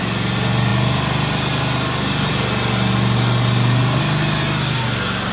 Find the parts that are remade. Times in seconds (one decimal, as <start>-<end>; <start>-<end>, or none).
none